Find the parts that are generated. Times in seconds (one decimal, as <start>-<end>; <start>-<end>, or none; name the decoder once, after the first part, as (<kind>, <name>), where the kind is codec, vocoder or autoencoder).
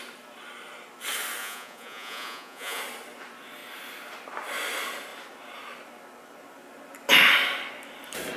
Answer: 1.4-2.8 (vocoder, Vocos)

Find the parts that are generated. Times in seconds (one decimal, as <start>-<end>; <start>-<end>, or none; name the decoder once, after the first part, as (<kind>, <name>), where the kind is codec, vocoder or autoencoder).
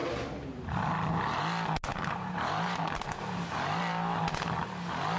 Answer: 1.9-3.0 (vocoder, BigVGAN v2)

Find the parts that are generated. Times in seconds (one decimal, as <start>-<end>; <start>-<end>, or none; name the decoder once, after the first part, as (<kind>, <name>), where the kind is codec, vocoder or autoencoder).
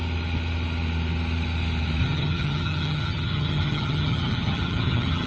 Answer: 2.0-5.3 (vocoder, HiFi-GAN)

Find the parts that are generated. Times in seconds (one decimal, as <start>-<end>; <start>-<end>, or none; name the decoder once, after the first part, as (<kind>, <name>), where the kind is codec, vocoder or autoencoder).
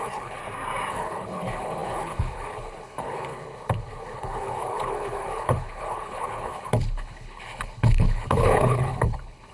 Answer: 0.0-0.4 (codec, HILCodec); 0.9-9.5